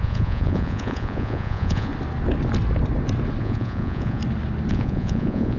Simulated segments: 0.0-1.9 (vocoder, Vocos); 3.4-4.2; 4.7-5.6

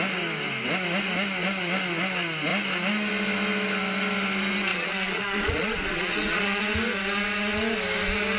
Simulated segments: 4.7-6.6 (vocoder, Vocos)